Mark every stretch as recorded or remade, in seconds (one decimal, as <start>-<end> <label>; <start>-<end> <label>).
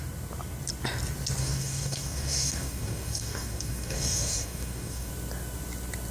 0.0-1.4 recorded; 1.4-5.1 remade; 5.1-6.1 recorded